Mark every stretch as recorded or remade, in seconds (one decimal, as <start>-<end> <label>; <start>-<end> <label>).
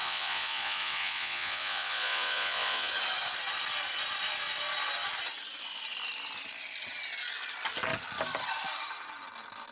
0.0-2.9 remade; 2.9-9.7 recorded